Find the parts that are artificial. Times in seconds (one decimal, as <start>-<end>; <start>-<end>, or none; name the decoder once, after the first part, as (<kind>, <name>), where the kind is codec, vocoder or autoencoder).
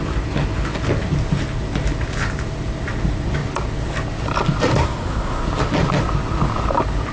4.7-5.4 (codec, SNAC)